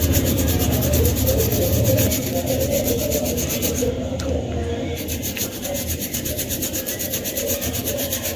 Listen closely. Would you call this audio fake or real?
fake